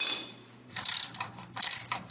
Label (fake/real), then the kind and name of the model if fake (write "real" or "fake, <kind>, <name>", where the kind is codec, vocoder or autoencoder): fake, vocoder, BigVGAN v2